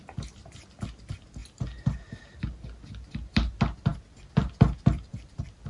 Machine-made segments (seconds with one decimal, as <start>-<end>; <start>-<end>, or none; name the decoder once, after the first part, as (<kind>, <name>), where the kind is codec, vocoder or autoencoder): 3.9-5.7 (vocoder, BigVGAN v2)